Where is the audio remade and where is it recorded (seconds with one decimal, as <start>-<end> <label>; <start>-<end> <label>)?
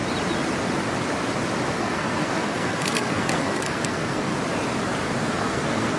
0.0-1.7 recorded; 1.7-4.3 remade; 4.3-5.3 recorded; 5.3-6.0 remade